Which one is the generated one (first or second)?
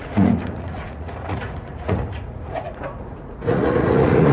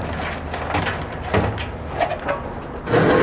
first